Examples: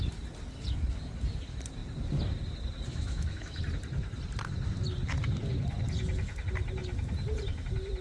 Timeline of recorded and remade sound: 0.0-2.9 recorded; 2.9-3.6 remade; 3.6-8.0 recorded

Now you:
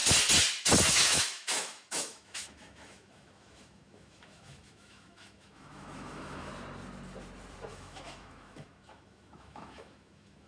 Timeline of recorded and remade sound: 0.0-0.9 recorded; 0.9-6.5 remade; 6.5-7.7 recorded; 7.7-10.5 remade

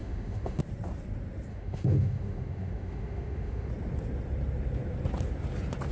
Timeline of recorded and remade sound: 0.0-0.6 remade; 0.6-1.5 recorded; 1.5-3.7 remade; 3.7-5.9 recorded

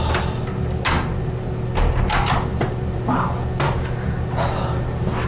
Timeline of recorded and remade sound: 0.0-5.3 recorded

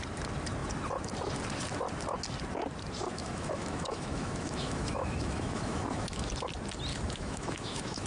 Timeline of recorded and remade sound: 0.0-3.1 recorded; 3.1-6.3 remade; 6.3-6.9 recorded; 6.9-8.1 remade

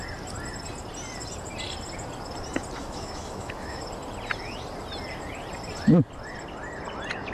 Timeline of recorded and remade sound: 0.0-2.8 recorded; 2.8-3.8 remade; 3.8-7.3 recorded

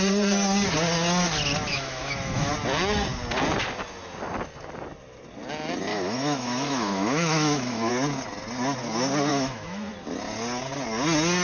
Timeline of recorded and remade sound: 0.0-1.7 recorded; 1.7-2.5 remade; 2.5-5.9 recorded; 5.9-7.9 remade; 7.9-9.3 recorded; 9.3-9.9 remade; 9.9-11.4 recorded